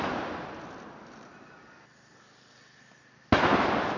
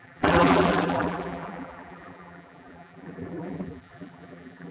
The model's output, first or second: second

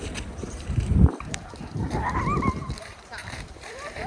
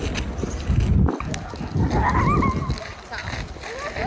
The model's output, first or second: first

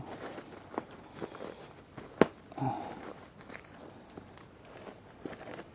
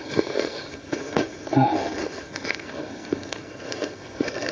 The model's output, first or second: second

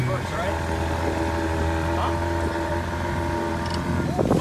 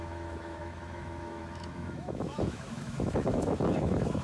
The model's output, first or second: second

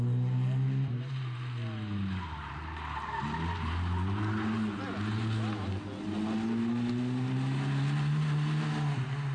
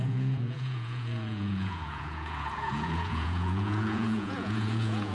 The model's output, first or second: second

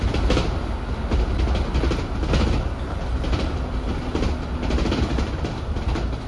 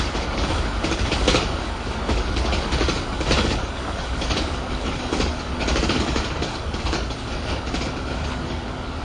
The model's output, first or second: second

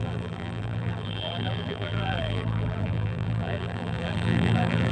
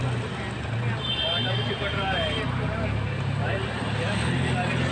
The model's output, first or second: first